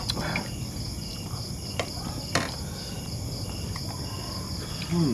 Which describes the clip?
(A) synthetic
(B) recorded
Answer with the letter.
B